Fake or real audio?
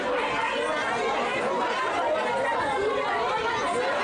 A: real